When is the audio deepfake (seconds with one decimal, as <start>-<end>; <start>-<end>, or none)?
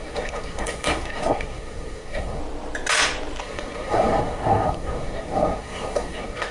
0.0-2.4; 3.4-6.5